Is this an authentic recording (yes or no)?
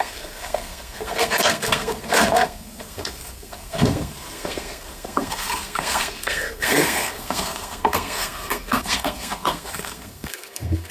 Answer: no